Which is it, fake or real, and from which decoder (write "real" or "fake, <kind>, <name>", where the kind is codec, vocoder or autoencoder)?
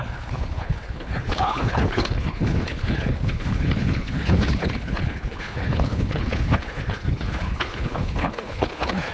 fake, codec, HILCodec